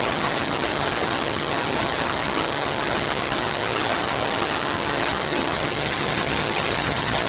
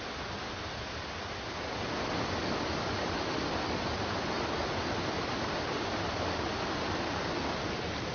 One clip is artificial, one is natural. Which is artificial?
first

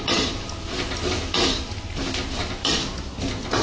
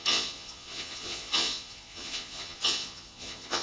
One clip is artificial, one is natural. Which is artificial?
second